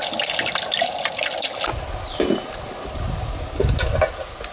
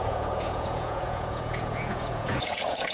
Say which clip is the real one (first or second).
first